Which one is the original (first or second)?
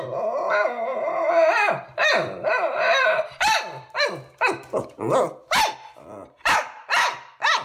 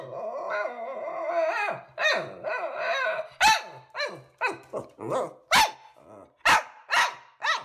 second